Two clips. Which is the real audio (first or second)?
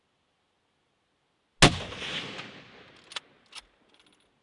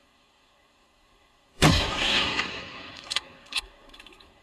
first